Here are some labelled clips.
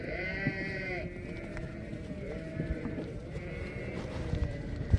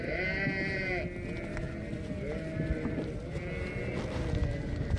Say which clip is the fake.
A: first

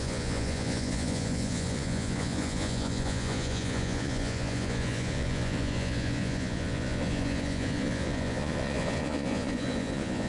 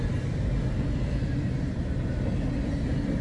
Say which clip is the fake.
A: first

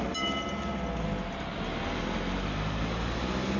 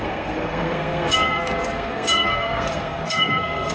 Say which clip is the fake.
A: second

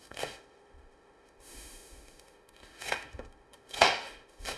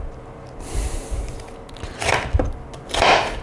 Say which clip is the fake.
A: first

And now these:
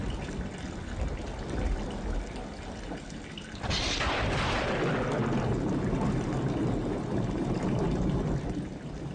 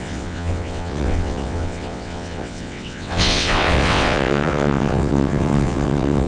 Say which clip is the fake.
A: second